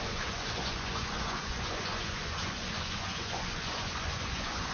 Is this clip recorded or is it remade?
remade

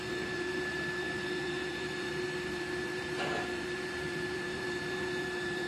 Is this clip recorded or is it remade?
remade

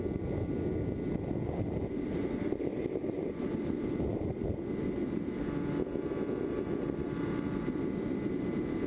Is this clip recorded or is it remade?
recorded